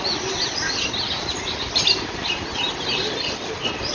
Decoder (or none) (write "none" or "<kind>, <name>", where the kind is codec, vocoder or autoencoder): none